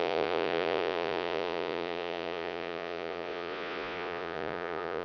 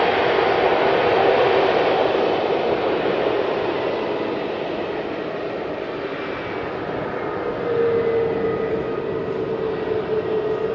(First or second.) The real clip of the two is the second